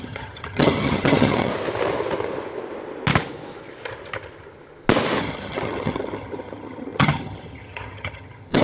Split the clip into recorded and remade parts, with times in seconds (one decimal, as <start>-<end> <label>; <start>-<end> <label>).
0.0-1.5 remade; 1.5-5.2 recorded; 5.2-8.6 remade

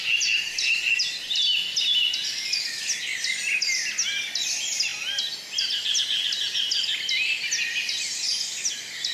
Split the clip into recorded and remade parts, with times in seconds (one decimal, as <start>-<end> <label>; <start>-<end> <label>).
0.0-9.1 recorded

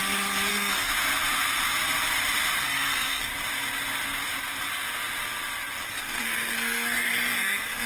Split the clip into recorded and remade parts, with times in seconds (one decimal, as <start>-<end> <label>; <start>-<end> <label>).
0.0-0.5 recorded; 0.5-0.9 remade; 0.9-2.6 recorded; 2.6-3.3 remade; 3.3-5.9 recorded; 5.9-7.9 remade

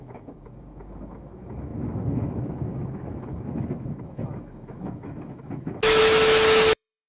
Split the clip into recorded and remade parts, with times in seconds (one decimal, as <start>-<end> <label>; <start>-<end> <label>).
0.0-7.1 remade

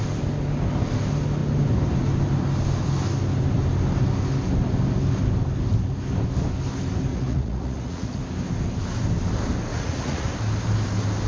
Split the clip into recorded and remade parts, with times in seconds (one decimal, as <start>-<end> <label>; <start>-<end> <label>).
0.0-7.1 recorded; 7.1-8.2 remade; 8.2-9.7 recorded; 9.7-10.3 remade; 10.3-11.3 recorded